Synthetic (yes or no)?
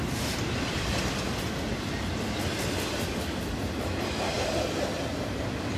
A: no